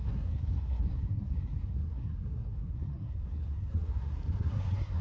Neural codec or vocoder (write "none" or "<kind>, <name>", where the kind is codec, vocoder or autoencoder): codec, SNAC